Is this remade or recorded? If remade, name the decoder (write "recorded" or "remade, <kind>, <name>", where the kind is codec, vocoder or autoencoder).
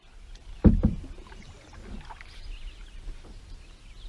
recorded